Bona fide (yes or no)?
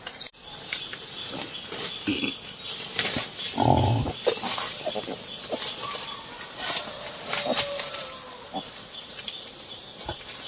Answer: yes